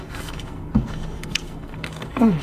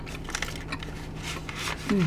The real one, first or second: second